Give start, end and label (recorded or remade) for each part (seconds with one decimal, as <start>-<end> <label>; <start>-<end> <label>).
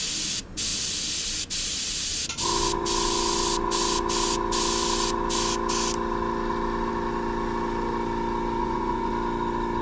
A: 0.0-8.6 recorded; 8.6-9.1 remade; 9.1-9.8 recorded